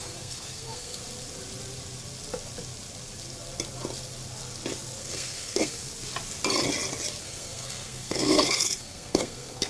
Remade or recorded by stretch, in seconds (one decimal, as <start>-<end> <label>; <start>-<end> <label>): 0.0-1.0 remade; 1.0-5.0 recorded; 5.0-5.9 remade; 5.9-7.2 recorded; 7.2-9.7 remade